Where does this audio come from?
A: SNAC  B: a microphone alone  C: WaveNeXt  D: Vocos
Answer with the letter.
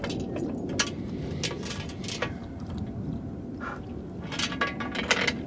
B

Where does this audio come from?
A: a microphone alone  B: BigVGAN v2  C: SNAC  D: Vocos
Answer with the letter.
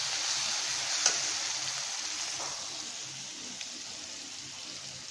A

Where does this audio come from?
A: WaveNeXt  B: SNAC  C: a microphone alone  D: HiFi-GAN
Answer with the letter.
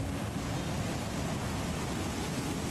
C